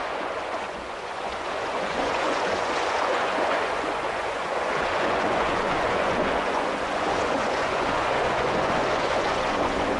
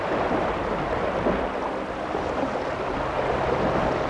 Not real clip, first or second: first